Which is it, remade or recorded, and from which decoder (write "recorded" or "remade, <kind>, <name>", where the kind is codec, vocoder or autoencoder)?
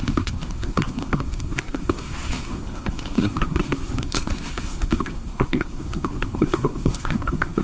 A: remade, codec, SNAC